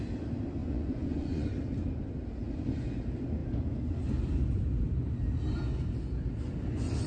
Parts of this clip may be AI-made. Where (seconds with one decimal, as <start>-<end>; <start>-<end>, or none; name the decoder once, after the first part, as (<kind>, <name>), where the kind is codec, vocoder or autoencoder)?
0.6-1.5 (vocoder, Vocos)